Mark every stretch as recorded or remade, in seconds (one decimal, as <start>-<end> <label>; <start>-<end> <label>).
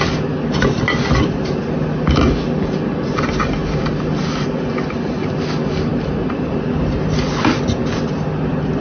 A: 0.0-8.8 recorded